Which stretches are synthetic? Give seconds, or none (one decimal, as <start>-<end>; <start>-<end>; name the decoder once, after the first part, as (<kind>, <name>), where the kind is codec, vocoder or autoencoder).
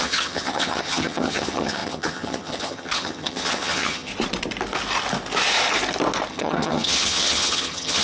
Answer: 0.0-4.1 (vocoder, HiFi-GAN); 6.3-8.0